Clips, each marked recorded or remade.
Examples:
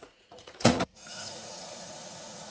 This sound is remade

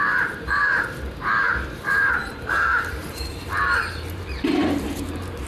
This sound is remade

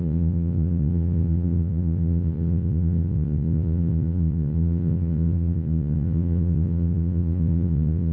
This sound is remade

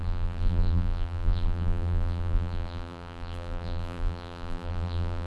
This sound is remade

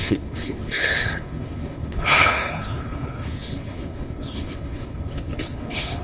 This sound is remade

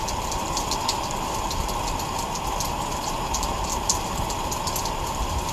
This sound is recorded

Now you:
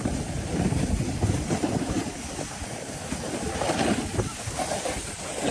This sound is recorded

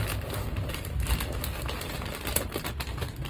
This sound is recorded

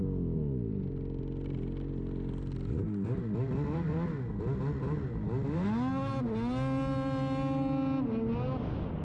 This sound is recorded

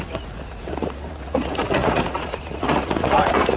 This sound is remade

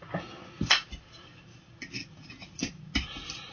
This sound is recorded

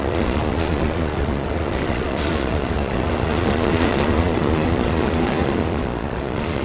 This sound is remade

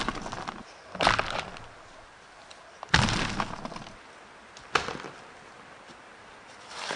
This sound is recorded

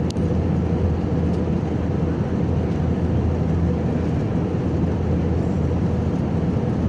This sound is recorded